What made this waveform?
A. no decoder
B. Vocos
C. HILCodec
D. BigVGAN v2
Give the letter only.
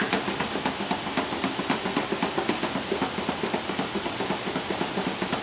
A